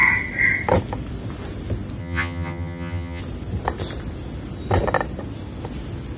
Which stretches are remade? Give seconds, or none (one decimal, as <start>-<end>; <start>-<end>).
2.0-3.2